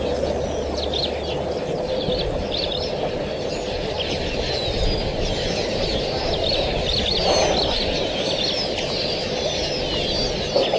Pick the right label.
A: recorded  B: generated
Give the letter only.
A